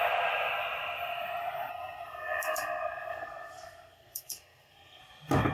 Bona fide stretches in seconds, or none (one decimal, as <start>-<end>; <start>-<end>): 0.0-1.7; 5.0-5.5

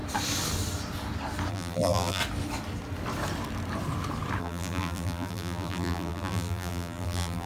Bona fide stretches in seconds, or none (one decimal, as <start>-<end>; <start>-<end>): 0.0-1.5; 2.2-4.4